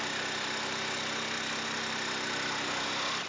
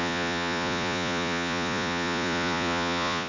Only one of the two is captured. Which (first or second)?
first